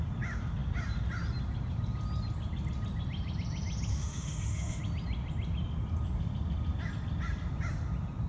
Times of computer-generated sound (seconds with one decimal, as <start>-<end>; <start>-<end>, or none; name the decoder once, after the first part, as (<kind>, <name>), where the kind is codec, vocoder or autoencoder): 3.9-4.8 (autoencoder, DAC-VAE)